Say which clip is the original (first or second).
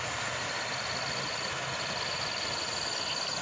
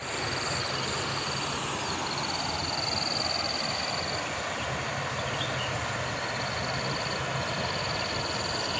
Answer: first